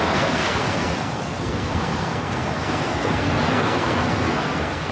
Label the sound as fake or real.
fake